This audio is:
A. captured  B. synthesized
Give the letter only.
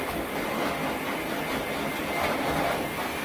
A